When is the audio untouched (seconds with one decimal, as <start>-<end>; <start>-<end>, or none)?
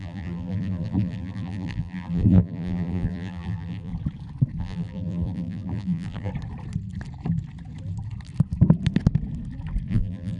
3.9-4.6; 6.3-9.9